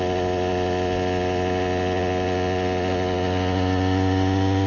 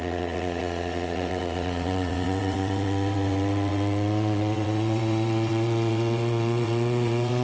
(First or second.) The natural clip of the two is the first